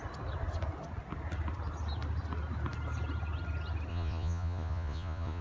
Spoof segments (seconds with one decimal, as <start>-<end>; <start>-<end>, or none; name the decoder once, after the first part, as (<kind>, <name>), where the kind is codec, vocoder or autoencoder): 3.9-5.4 (vocoder, Vocos)

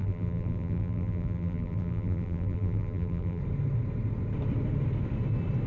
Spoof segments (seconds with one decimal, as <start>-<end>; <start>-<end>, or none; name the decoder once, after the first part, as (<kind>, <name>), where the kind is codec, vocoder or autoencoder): 0.0-3.4 (vocoder, BigVGAN v2)

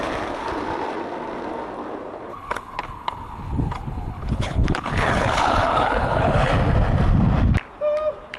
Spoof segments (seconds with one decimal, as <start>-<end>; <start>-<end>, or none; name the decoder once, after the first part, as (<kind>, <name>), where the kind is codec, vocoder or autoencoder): 2.3-6.5 (codec, HILCodec)

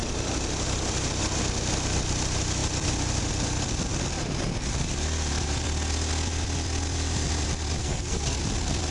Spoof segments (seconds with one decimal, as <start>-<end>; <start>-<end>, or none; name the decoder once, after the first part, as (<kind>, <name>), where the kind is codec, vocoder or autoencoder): 7.8-8.4 (codec, SNAC)

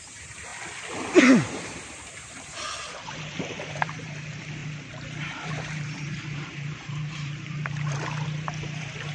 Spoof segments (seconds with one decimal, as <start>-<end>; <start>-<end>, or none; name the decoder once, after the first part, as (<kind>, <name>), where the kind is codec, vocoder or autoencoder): 0.0-0.5 (vocoder, BigVGAN v2); 1.1-9.1

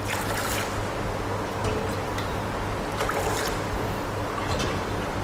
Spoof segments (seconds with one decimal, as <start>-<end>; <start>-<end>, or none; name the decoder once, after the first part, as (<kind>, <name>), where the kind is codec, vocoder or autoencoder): none